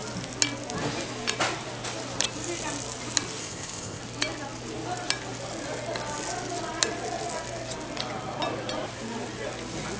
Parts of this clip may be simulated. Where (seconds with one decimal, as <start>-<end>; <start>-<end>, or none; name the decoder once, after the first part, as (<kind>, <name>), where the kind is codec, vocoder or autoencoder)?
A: 3.4-4.0 (codec, ZipCodec)